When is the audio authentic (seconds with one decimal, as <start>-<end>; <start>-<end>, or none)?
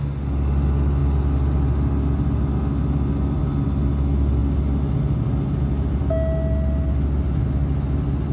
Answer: 0.0-8.3